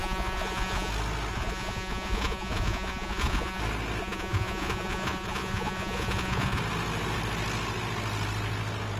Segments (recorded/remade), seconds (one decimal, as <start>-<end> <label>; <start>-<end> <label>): 0.0-0.9 remade; 0.9-1.3 recorded; 1.3-3.6 remade; 3.6-4.0 recorded; 4.0-6.6 remade; 6.6-9.0 recorded